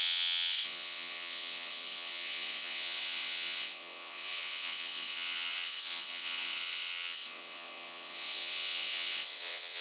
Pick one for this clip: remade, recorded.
remade